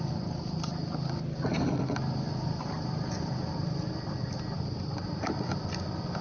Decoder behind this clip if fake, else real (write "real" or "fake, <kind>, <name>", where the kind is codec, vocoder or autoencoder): real